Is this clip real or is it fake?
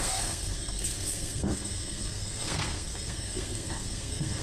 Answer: fake